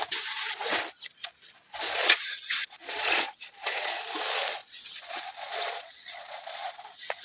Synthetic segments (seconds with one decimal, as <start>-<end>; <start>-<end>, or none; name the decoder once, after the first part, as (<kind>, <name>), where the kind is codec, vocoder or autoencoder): 2.0-4.0 (vocoder, Vocos); 4.6-6.8